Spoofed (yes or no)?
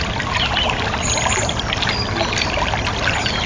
no